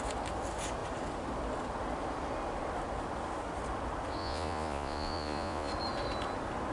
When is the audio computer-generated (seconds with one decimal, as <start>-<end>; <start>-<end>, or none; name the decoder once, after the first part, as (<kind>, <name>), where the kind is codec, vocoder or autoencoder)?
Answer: 4.2-5.7 (vocoder, Vocos)